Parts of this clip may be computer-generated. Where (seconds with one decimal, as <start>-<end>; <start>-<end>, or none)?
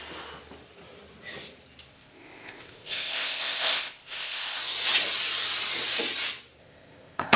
1.9-4.6; 6.6-7.4